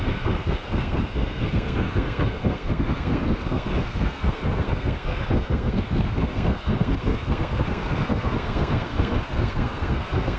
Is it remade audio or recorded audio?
remade